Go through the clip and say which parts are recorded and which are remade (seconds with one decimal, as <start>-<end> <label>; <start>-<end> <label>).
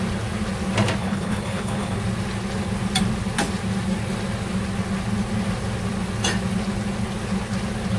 0.0-1.0 recorded; 1.0-2.0 remade; 2.0-8.0 recorded